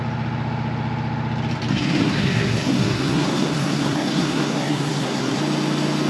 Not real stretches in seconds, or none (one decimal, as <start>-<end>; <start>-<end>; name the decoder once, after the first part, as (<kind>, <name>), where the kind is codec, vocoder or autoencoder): 1.7-5.4 (codec, SNAC)